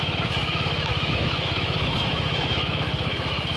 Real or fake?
fake